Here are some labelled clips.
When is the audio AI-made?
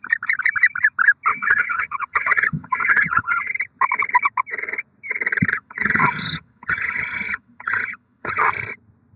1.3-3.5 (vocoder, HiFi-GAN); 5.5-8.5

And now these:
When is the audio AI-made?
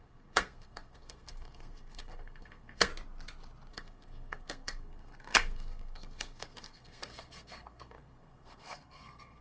0.0-2.9 (codec, SNAC); 3.7-9.4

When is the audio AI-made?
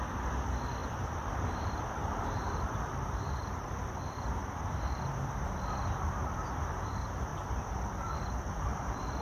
0.8-3.7 (vocoder, BigVGAN v2); 7.3-9.2